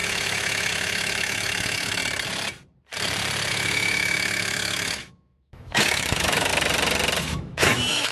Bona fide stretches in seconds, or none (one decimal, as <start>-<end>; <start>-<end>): 2.0-3.5; 6.5-7.2